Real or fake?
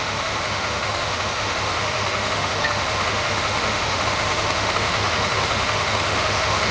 fake